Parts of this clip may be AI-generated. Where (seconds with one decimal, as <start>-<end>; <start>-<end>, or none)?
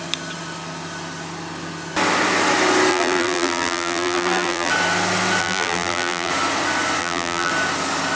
2.9-4.7; 5.4-6.3; 7.0-7.5